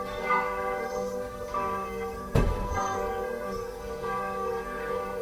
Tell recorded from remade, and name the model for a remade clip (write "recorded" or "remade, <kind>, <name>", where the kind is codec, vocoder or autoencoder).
remade, codec, SNAC